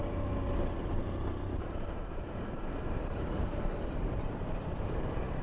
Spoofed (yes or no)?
yes